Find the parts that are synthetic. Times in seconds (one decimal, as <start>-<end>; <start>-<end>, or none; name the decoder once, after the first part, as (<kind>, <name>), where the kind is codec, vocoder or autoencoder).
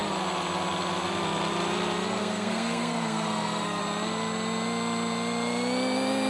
2.2-3.8 (codec, SNAC)